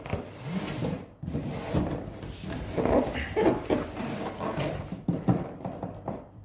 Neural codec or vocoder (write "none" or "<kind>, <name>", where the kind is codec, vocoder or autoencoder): vocoder, BigVGAN v2